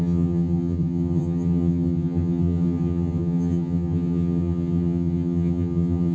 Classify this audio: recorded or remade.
remade